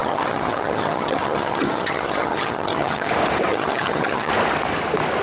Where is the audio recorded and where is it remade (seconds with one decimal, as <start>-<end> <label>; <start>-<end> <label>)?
0.0-3.1 remade; 3.1-3.5 recorded; 3.5-4.3 remade; 4.3-5.2 recorded